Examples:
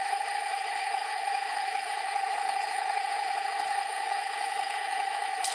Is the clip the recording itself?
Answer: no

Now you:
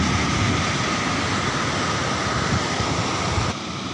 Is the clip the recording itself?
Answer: yes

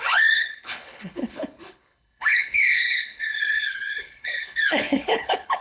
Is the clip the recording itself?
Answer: no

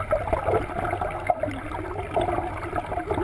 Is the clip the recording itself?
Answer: yes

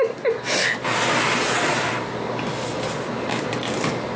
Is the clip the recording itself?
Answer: yes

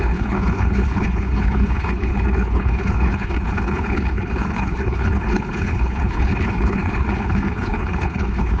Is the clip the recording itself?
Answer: no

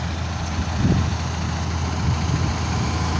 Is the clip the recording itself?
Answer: yes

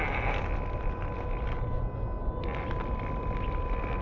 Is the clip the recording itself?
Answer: yes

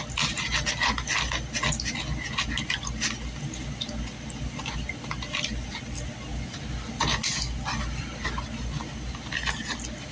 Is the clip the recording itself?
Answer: yes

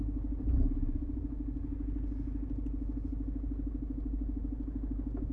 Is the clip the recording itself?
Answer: yes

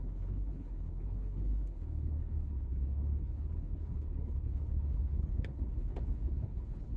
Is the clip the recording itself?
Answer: no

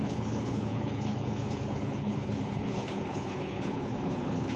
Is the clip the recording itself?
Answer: no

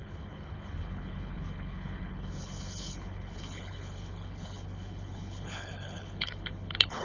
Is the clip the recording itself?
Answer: no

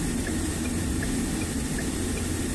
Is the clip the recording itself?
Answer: yes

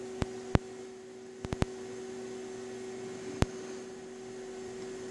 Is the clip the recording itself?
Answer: yes